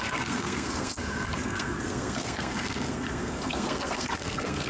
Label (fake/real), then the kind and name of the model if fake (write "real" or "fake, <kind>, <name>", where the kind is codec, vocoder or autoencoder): fake, codec, SNAC